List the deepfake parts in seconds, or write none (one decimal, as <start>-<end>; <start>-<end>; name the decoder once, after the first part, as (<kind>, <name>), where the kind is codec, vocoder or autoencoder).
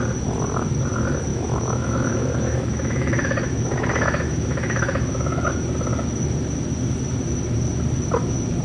1.3-5.6 (autoencoder, DAC-VAE)